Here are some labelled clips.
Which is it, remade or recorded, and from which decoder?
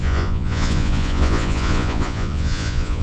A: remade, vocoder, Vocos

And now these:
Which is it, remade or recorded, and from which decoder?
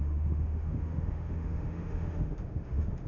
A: remade, autoencoder, DAC-VAE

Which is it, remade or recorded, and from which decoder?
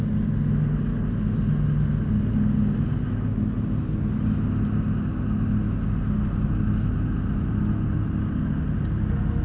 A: recorded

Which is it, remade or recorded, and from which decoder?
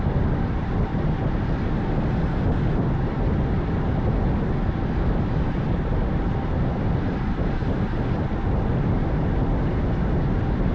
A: recorded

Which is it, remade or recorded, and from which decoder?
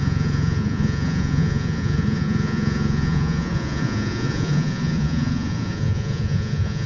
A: remade, vocoder, Vocos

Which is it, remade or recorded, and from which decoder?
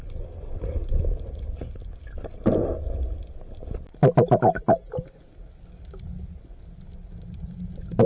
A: recorded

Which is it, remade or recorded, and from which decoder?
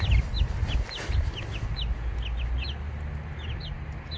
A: recorded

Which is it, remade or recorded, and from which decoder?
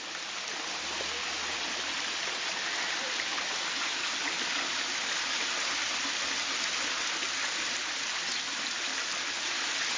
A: recorded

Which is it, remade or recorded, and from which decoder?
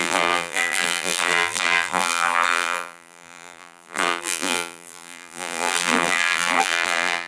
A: remade, vocoder, BigVGAN v2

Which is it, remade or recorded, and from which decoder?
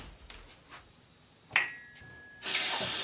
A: recorded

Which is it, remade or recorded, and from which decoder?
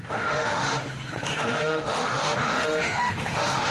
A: remade, autoencoder, DAC-VAE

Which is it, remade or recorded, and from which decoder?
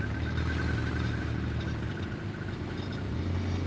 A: recorded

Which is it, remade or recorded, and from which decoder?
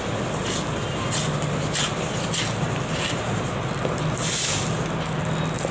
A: recorded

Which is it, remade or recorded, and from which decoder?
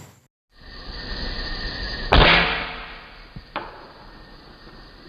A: recorded